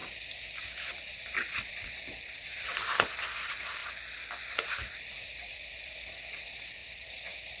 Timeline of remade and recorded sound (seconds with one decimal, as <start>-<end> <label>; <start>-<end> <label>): 0.0-0.6 recorded; 0.6-3.8 remade; 3.8-4.4 recorded; 4.4-7.6 remade